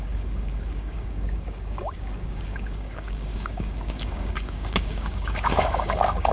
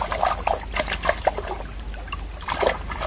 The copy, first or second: first